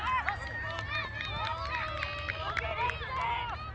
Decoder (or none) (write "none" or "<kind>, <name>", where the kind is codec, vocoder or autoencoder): none